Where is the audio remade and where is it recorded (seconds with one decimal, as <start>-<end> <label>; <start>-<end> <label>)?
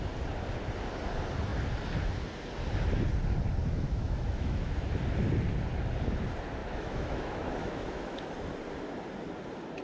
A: 0.0-3.6 recorded; 3.6-4.7 remade; 4.7-6.6 recorded; 6.6-8.3 remade; 8.3-9.8 recorded